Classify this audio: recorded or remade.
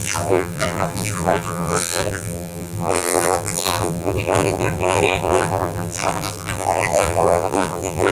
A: remade